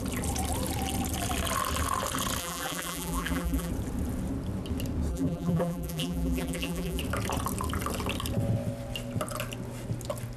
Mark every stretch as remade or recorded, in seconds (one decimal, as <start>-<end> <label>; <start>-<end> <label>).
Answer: 0.0-2.4 recorded; 2.4-3.7 remade; 3.7-5.1 recorded; 5.1-7.0 remade; 7.0-10.4 recorded